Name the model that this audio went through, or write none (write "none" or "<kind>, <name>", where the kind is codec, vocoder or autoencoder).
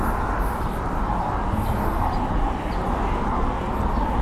none